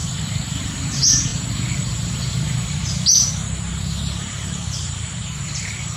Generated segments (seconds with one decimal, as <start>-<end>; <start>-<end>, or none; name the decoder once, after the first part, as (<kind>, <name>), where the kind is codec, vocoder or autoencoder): 0.6-6.0 (vocoder, BigVGAN v2)

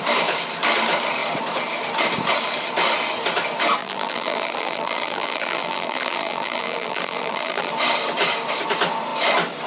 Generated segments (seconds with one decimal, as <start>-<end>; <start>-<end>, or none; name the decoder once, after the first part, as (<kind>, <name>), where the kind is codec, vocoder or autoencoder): 3.8-7.7 (vocoder, BigVGAN v2)

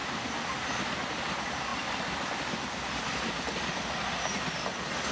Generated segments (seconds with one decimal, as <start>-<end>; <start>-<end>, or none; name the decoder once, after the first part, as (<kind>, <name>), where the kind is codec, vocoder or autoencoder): none

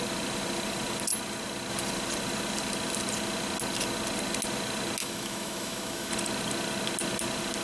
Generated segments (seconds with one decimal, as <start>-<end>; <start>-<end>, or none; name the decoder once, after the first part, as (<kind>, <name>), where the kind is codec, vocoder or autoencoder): 5.0-6.1 (autoencoder, DAC-VAE)